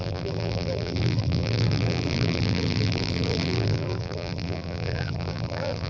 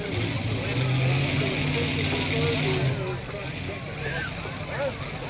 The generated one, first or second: first